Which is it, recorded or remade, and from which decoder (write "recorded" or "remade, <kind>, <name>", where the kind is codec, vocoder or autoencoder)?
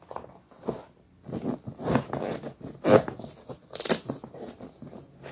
recorded